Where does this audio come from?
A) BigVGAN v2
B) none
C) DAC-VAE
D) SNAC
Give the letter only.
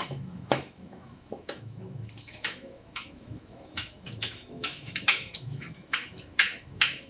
C